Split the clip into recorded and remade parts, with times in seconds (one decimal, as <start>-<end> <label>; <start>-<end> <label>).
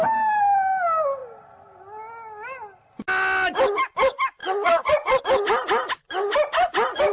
0.0-4.4 recorded; 4.4-5.2 remade; 5.2-7.1 recorded